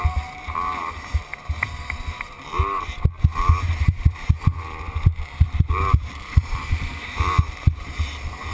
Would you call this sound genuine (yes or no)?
no